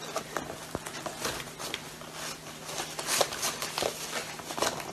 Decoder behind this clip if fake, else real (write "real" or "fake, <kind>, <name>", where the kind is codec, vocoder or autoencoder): real